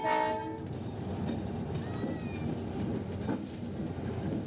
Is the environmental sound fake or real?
real